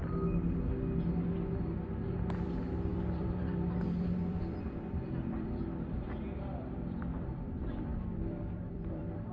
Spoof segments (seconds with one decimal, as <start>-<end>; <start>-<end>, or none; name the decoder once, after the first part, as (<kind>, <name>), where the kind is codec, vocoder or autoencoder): 2.9-9.3 (vocoder, BigVGAN v2)